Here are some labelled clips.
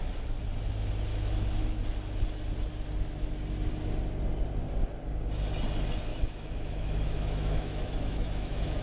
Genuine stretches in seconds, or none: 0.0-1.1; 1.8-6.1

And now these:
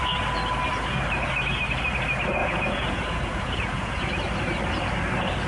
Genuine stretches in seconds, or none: 0.0-2.4; 4.1-5.5

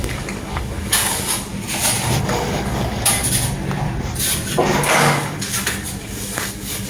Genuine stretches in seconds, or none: 1.5-2.2; 3.2-4.8